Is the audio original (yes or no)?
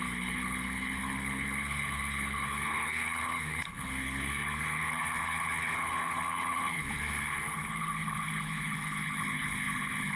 no